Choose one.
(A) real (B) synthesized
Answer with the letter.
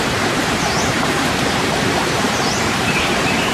B